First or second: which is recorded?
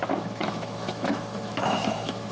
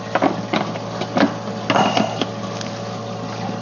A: second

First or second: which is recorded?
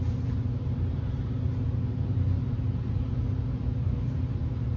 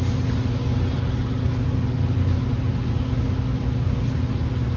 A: second